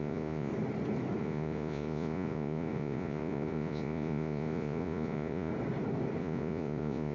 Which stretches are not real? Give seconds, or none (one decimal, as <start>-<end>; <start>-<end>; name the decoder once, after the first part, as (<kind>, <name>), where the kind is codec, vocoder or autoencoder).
0.0-0.5 (vocoder, Vocos); 1.2-5.5; 6.2-7.1